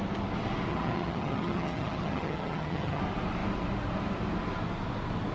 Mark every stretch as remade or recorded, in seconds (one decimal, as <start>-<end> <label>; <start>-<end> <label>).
0.0-0.7 recorded; 0.7-3.0 remade; 3.0-5.3 recorded